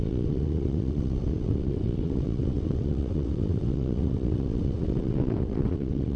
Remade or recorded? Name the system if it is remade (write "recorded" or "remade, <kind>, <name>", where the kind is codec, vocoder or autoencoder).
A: remade, vocoder, WaveNeXt